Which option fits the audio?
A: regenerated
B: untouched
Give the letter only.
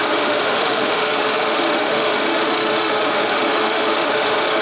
A